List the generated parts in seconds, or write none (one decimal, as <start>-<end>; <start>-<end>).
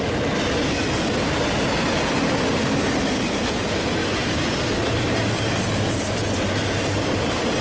none